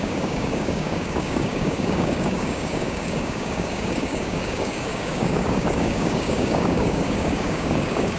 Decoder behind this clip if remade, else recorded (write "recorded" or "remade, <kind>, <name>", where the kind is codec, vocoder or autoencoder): remade, codec, DAC